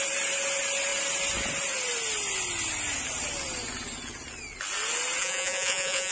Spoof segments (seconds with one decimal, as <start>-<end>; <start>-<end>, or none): 5.2-6.1